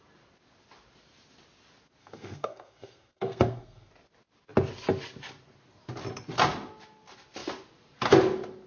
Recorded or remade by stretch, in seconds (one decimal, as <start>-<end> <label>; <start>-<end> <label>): 0.0-2.0 recorded; 2.0-3.9 remade; 3.9-8.7 recorded